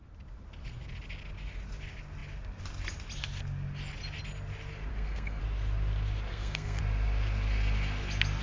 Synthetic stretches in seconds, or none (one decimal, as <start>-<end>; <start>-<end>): 4.9-5.4; 6.3-6.8